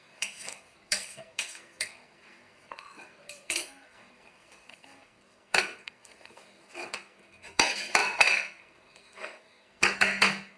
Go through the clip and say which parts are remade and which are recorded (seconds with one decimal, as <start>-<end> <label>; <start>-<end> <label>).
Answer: 0.0-10.6 remade

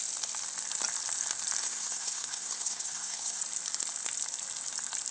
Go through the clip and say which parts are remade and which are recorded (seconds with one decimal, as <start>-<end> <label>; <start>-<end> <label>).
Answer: 0.0-1.6 recorded; 1.6-3.4 remade; 3.4-5.1 recorded

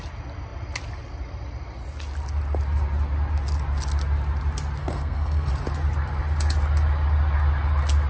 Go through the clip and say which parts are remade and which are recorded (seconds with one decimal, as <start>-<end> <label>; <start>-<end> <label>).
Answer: 0.0-4.8 recorded; 4.8-5.5 remade; 5.5-8.1 recorded

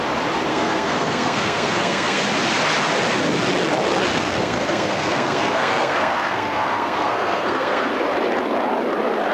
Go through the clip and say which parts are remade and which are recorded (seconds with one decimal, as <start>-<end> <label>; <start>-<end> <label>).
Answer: 0.0-0.5 recorded; 0.5-2.2 remade; 2.2-4.1 recorded; 4.1-7.9 remade; 7.9-9.3 recorded

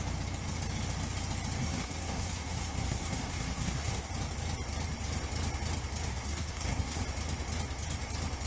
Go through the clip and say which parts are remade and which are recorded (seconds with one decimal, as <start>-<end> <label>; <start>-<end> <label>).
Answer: 0.0-1.6 recorded; 1.6-4.1 remade; 4.1-6.1 recorded; 6.1-7.0 remade; 7.0-8.5 recorded

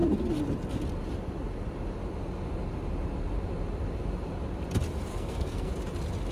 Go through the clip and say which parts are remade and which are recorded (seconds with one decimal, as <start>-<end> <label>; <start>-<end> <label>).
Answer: 0.0-5.1 recorded; 5.1-5.7 remade; 5.7-6.3 recorded

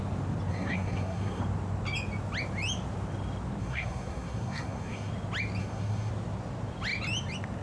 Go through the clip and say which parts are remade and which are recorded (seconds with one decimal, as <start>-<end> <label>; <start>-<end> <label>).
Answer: 0.0-0.5 recorded; 0.5-1.4 remade; 1.4-3.6 recorded; 3.6-5.1 remade; 5.1-5.6 recorded; 5.6-6.1 remade; 6.1-7.6 recorded